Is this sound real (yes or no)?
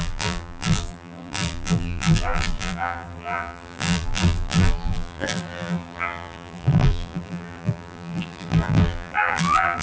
no